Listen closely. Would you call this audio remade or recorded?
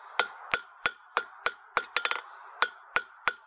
recorded